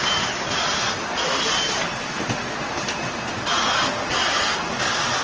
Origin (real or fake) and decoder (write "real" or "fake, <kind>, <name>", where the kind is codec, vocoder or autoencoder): real